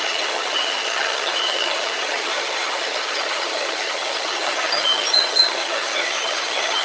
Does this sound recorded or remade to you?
remade